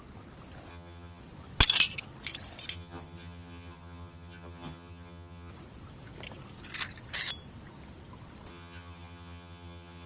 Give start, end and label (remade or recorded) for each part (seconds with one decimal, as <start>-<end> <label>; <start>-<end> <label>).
0.0-0.7 recorded; 0.7-1.2 remade; 1.2-2.7 recorded; 2.7-5.5 remade; 5.5-8.5 recorded; 8.5-10.1 remade